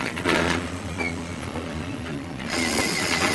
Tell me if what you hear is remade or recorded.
remade